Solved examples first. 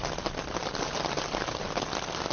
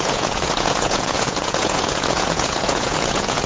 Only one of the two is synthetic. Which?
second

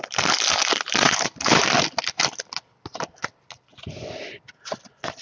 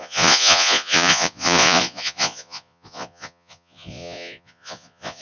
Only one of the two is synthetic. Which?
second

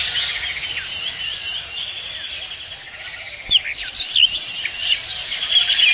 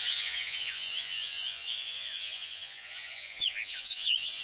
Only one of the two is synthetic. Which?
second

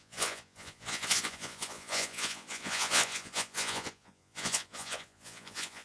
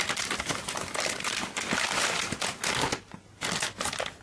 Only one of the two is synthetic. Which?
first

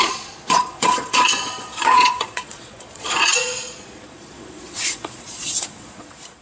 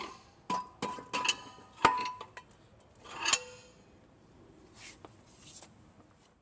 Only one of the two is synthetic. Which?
first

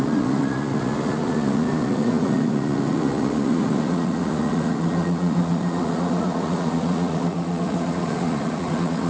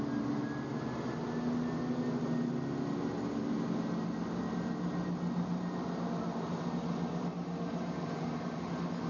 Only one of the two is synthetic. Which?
first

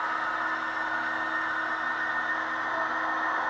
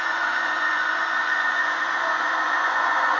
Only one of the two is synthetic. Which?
second